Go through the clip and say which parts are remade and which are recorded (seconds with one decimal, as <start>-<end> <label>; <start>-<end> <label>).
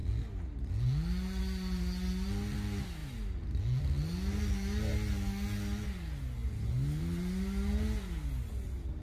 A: 0.0-9.0 recorded